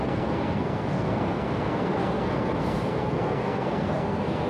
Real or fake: fake